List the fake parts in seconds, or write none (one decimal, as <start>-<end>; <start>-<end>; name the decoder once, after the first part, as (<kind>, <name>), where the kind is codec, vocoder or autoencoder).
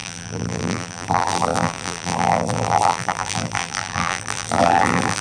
0.0-5.2 (vocoder, BigVGAN v2)